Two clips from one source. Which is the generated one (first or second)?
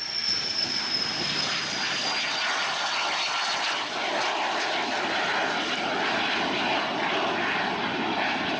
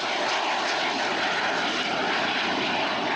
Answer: second